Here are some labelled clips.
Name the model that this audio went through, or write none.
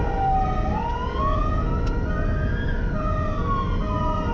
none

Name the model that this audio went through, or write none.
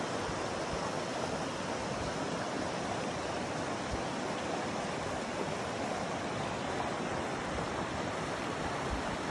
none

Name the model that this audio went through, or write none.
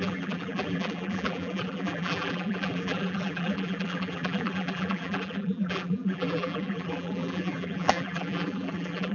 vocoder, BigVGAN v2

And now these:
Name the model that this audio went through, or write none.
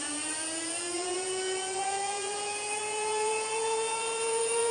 vocoder, Vocos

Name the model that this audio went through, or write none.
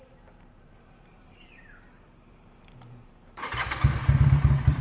vocoder, BigVGAN v2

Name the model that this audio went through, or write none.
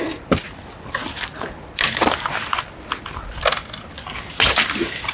none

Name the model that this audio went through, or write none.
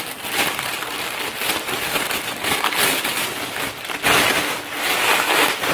none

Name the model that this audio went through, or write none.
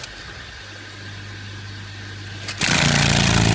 none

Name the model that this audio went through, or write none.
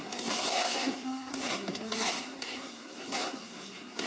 codec, SNAC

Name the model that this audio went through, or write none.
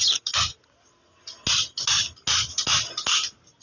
none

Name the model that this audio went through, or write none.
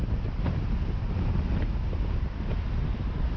none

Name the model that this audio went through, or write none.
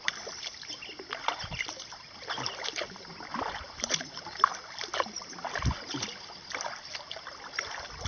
none